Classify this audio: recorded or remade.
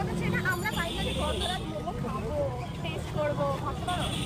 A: recorded